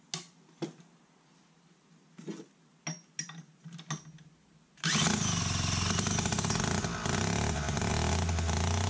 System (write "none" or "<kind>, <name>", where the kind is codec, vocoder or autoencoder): none